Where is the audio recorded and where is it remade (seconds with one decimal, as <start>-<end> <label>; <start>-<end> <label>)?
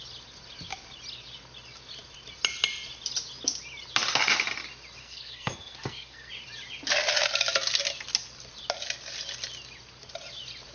0.0-5.0 recorded; 5.0-6.3 remade; 6.3-10.7 recorded